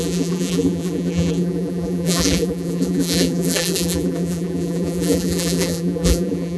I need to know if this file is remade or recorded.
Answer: remade